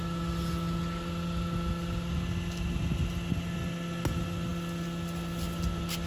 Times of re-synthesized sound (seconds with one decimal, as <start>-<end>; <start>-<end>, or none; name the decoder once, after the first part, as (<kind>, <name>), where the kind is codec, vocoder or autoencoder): none